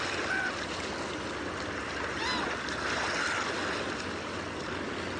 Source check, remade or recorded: recorded